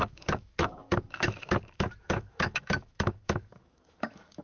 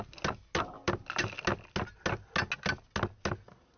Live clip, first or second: second